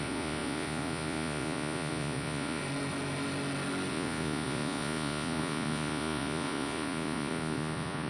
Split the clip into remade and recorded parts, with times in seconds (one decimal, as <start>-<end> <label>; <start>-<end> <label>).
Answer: 0.0-2.6 remade; 2.6-3.9 recorded; 3.9-8.1 remade